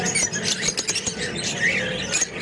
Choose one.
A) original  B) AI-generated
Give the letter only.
A